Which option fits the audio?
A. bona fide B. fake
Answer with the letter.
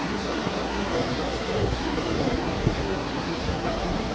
B